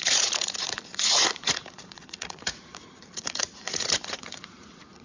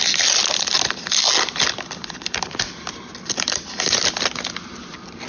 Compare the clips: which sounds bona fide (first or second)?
second